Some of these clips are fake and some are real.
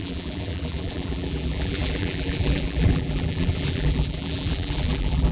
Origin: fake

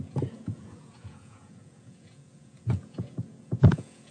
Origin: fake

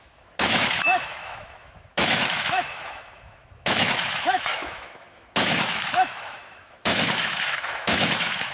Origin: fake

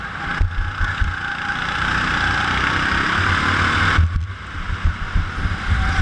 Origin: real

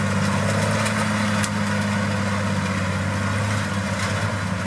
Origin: real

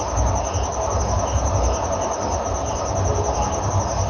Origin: real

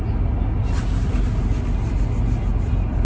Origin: real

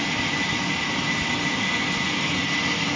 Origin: real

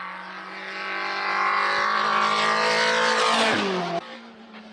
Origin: real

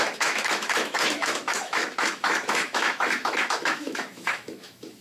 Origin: fake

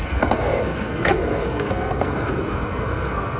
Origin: fake